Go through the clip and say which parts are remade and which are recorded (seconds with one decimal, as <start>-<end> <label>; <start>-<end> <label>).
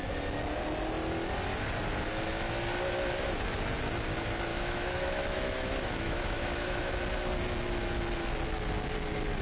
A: 0.0-4.5 recorded; 4.5-6.9 remade; 6.9-9.4 recorded